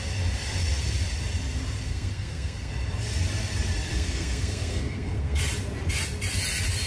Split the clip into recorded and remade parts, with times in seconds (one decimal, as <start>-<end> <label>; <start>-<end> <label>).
0.0-1.9 recorded; 1.9-2.7 remade; 2.7-3.9 recorded; 3.9-5.4 remade; 5.4-6.9 recorded